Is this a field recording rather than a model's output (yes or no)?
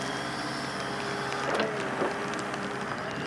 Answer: yes